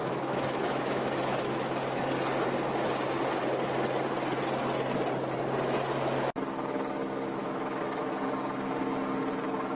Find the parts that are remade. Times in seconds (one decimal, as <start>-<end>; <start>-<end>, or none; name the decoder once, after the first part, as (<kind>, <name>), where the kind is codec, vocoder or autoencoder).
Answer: 0.0-2.1 (autoencoder, DAC-VAE); 7.4-8.0